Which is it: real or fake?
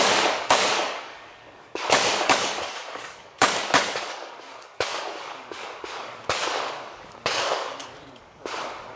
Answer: fake